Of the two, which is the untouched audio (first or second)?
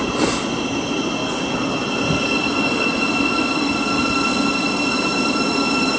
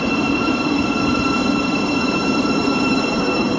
first